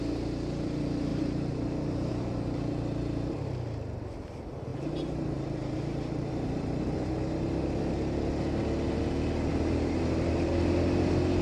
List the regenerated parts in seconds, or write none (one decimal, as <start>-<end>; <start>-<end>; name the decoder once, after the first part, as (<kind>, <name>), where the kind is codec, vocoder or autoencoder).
1.1-2.1 (vocoder, BigVGAN v2); 4.7-6.6; 9.5-10.5